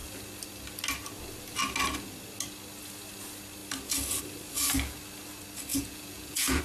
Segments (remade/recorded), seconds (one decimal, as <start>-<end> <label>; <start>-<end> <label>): 0.0-5.7 recorded; 5.7-6.6 remade